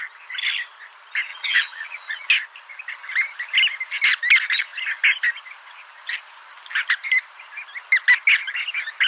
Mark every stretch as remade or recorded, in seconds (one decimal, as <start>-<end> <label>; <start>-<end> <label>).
0.0-1.3 recorded; 1.3-2.3 remade; 2.3-9.1 recorded